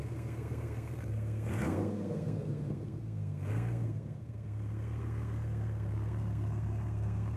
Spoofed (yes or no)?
yes